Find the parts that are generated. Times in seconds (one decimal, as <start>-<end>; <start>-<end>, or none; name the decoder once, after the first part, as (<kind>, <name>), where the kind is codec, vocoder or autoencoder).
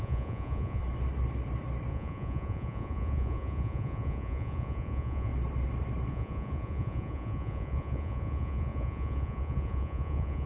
0.0-0.8 (vocoder, Vocos); 1.9-5.3; 6.1-10.5